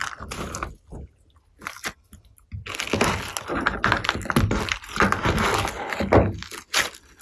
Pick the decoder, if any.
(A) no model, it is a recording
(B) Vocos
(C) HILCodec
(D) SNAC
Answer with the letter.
A